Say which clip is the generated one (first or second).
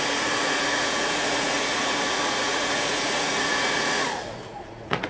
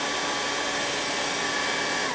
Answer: first